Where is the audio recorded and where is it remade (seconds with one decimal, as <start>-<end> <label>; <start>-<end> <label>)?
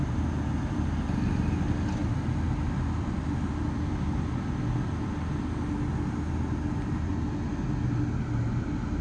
0.0-9.0 recorded